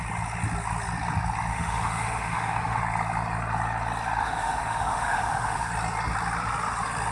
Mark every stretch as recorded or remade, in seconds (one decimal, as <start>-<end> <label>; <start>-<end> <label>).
0.0-1.5 recorded; 1.5-2.8 remade; 2.8-4.2 recorded; 4.2-5.7 remade; 5.7-7.1 recorded